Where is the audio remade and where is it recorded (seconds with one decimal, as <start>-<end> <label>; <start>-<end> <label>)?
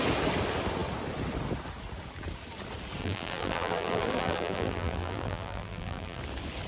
0.0-3.0 recorded; 3.0-6.2 remade; 6.2-6.7 recorded